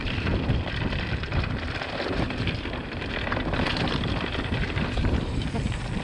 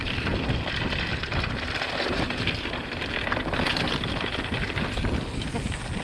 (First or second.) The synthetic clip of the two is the first